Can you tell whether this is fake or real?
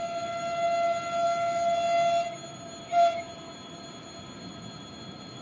real